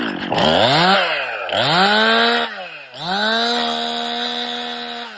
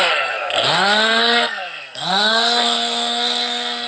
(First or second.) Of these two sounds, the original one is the first